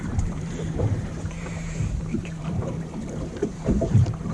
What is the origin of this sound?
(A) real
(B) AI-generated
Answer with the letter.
B